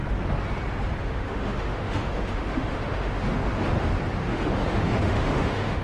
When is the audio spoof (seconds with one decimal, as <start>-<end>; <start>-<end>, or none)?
1.0-3.5; 4.2-5.8